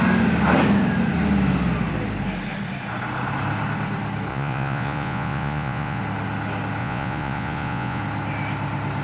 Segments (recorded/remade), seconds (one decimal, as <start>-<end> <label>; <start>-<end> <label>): 0.0-4.3 recorded; 4.3-6.0 remade; 6.0-6.8 recorded; 6.8-8.0 remade; 8.0-9.0 recorded